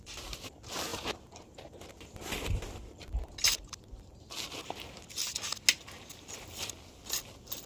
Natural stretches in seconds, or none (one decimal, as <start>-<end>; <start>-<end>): 0.0-0.9; 1.8-7.7